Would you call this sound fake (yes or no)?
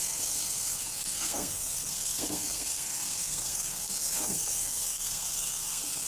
yes